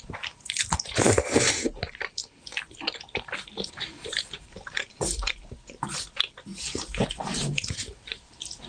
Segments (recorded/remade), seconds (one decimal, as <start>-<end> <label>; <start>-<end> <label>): 0.0-2.2 remade; 2.2-3.0 recorded; 3.0-6.5 remade; 6.5-7.1 recorded; 7.1-8.7 remade